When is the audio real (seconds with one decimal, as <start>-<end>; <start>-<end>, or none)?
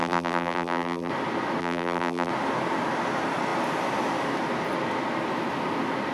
1.1-1.6; 2.3-6.1